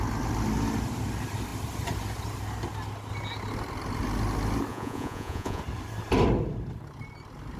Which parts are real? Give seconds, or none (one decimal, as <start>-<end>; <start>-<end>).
0.0-4.7; 5.6-7.6